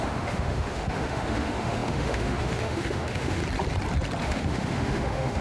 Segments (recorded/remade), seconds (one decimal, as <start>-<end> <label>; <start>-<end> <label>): 0.0-3.4 remade; 3.4-4.2 recorded; 4.2-5.4 remade